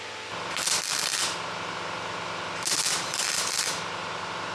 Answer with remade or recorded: recorded